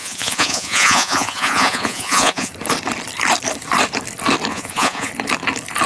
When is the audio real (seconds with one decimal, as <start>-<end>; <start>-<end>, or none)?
2.5-4.5; 5.1-5.9